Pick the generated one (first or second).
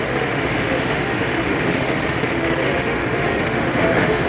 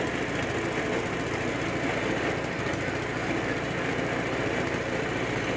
first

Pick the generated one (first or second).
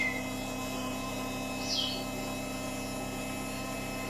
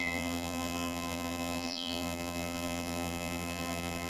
second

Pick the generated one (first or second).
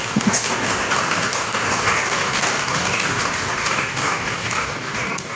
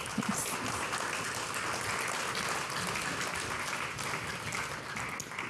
first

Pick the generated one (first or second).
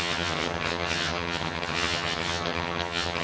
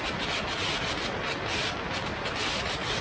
first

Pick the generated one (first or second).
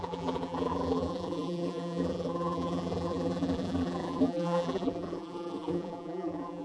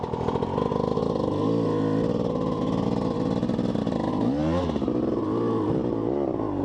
first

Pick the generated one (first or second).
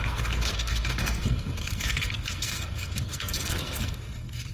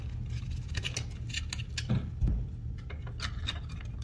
first